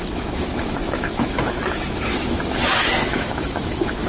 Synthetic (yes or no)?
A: yes